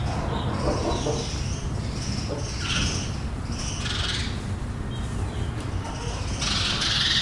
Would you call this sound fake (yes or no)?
no